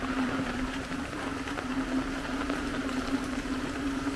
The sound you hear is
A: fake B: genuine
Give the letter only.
A